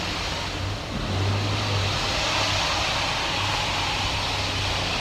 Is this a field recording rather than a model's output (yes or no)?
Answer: yes